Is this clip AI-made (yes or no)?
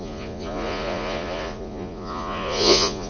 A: yes